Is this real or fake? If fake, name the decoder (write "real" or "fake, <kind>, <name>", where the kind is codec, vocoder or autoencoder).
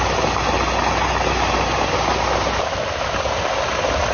real